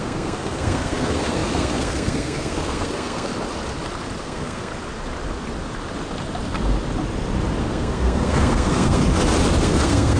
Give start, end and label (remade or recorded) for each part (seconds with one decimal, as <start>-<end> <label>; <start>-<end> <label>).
0.0-3.3 remade; 3.3-4.2 recorded; 4.2-4.7 remade; 4.7-7.6 recorded; 7.6-9.0 remade; 9.0-9.6 recorded; 9.6-10.2 remade